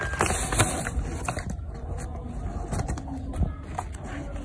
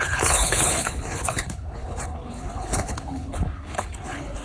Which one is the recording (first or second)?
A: first